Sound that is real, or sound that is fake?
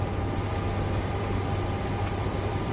fake